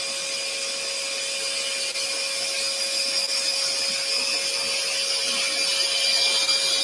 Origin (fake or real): real